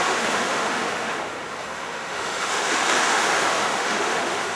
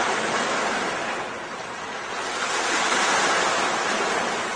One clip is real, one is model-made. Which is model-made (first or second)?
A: first